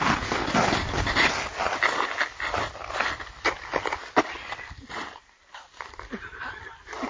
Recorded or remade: recorded